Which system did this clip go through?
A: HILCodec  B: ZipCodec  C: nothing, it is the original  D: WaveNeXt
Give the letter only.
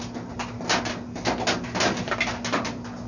C